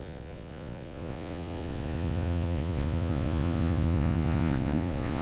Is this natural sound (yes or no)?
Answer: no